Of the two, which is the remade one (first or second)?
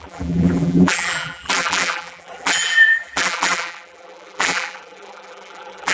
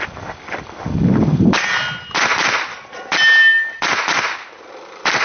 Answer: first